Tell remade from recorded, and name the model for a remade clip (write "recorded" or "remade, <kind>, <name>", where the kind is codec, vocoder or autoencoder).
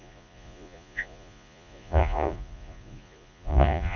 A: remade, vocoder, Vocos